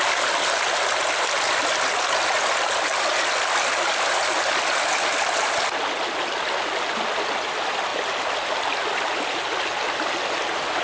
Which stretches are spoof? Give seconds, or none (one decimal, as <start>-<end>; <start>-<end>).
none